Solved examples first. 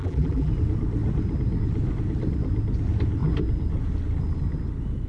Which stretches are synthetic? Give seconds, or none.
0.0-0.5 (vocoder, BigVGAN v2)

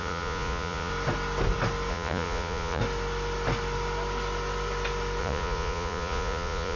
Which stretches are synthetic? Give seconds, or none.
0.0-0.9 (vocoder, Vocos); 1.9-2.8; 5.2-6.8

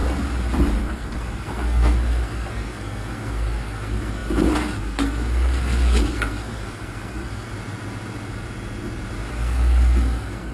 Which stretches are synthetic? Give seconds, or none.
0.8-7.5 (codec, SNAC); 9.3-10.5

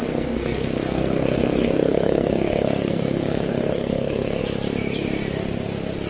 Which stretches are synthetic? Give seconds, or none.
0.0-4.4 (codec, SNAC)

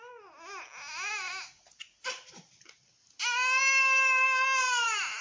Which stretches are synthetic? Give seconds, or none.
none

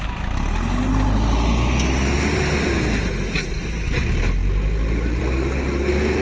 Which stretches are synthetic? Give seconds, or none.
none

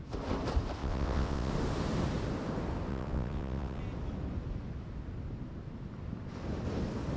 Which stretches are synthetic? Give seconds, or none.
0.8-1.5 (vocoder, WaveNeXt); 2.9-3.8

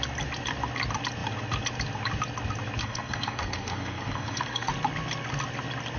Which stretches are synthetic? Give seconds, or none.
2.8-4.7 (codec, SNAC)